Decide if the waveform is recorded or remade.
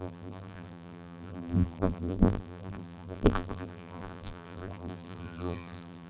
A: remade